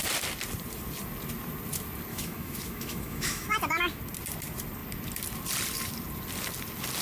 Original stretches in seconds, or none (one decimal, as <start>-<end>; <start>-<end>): 0.0-2.1; 4.0-7.0